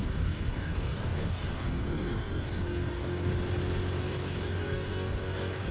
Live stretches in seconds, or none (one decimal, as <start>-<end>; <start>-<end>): 3.3-4.0